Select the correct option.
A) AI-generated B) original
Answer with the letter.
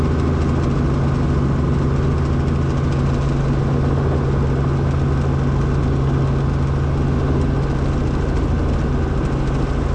B